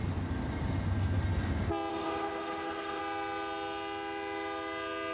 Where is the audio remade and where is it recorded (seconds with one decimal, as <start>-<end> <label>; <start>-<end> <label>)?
0.0-1.9 recorded; 1.9-3.0 remade; 3.0-5.1 recorded